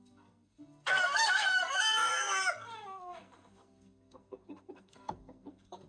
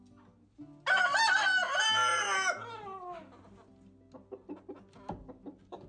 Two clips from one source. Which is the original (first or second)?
second